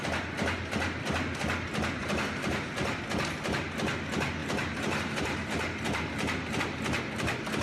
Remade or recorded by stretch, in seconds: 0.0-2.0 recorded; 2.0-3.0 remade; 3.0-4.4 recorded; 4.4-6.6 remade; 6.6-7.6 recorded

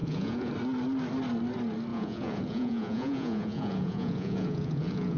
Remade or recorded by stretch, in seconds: 0.0-0.5 remade; 0.5-1.9 recorded; 1.9-5.2 remade

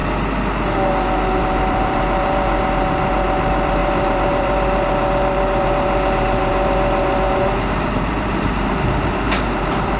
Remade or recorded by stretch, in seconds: 0.0-1.4 recorded; 1.4-10.0 remade

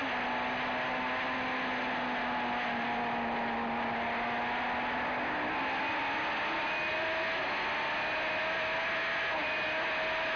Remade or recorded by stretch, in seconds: 0.0-10.4 recorded

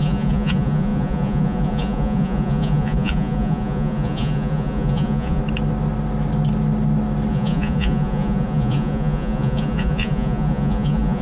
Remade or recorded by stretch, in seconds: 0.0-5.4 remade; 5.4-7.3 recorded; 7.3-11.2 remade